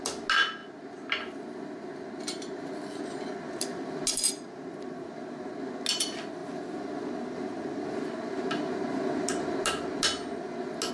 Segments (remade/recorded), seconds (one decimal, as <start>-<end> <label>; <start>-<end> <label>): 0.0-10.9 recorded